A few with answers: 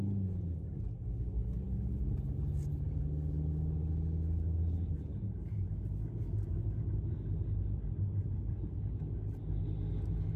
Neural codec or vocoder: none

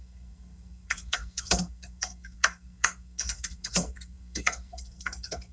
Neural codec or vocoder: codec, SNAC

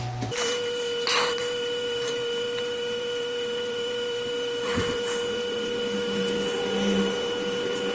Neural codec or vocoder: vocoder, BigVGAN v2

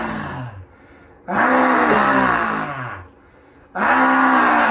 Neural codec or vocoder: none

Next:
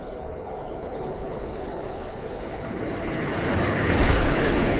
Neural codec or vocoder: codec, HILCodec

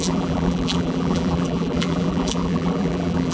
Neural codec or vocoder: vocoder, BigVGAN v2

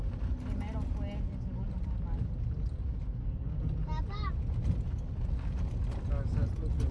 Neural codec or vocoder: none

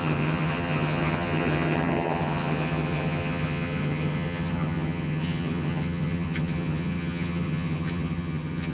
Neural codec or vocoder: vocoder, HiFi-GAN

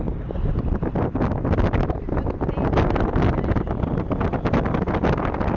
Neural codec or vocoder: none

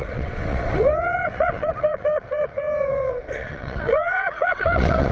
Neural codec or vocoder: vocoder, WaveNeXt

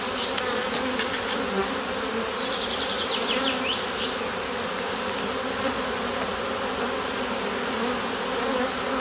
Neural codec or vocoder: none